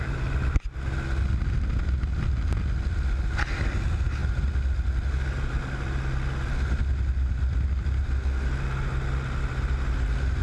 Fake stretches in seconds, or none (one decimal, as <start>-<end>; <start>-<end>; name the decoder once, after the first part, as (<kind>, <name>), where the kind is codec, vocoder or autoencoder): none

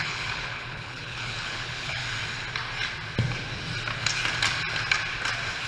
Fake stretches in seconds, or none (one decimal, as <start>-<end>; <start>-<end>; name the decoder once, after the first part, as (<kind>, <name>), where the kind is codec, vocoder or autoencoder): 0.0-2.0 (codec, HILCodec)